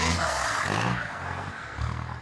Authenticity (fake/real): fake